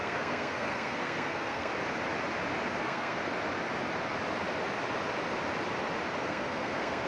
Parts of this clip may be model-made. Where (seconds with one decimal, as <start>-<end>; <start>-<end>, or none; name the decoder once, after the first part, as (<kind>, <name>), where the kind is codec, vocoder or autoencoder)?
0.0-1.7 (codec, SNAC); 2.8-3.2; 6.2-7.1